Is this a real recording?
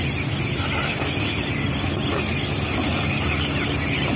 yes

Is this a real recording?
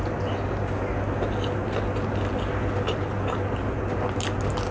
yes